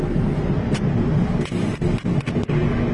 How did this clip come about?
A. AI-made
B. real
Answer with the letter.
B